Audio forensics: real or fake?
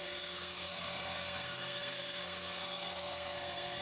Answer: fake